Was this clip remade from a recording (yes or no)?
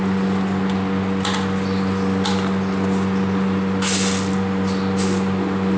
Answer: no